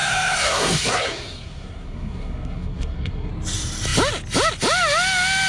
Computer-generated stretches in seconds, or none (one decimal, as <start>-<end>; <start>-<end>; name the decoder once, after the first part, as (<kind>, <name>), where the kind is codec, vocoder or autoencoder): 0.0-3.3 (codec, SNAC)